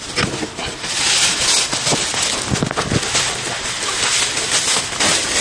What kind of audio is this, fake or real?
real